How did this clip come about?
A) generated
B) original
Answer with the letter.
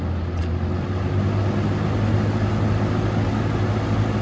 B